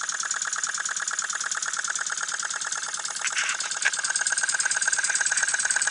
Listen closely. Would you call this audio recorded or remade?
recorded